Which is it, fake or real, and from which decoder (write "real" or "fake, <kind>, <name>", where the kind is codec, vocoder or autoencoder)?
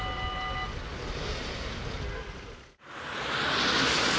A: real